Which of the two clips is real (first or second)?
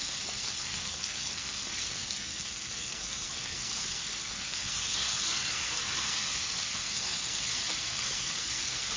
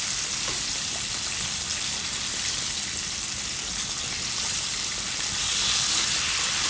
second